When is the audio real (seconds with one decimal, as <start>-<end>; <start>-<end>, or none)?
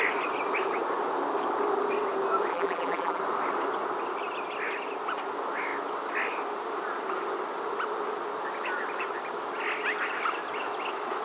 0.0-2.5; 3.2-11.2